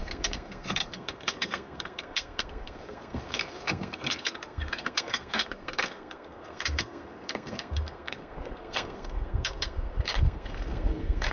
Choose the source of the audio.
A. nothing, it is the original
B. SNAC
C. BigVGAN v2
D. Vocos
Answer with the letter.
B